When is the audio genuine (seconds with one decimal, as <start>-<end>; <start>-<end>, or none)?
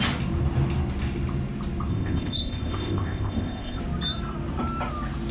0.0-1.9; 3.8-5.3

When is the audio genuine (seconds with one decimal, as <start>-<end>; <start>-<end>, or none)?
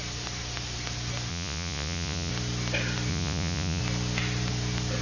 0.0-1.3; 2.3-3.1; 3.8-5.0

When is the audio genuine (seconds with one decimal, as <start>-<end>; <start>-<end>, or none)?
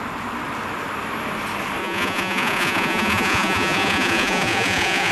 0.0-1.8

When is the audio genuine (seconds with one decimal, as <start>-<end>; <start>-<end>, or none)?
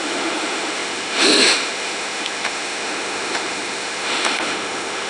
none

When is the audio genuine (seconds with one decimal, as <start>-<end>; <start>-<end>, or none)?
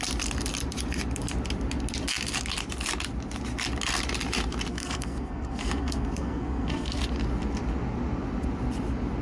0.0-4.7; 7.0-9.2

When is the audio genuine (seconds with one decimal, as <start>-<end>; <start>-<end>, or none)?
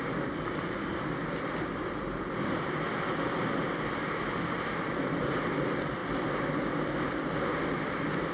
0.0-8.3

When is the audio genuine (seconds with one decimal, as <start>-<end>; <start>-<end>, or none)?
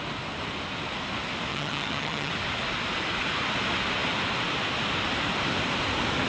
0.0-1.5; 2.3-6.3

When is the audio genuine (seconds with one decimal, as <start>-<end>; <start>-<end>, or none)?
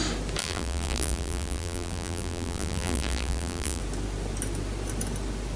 0.0-0.4; 3.8-5.6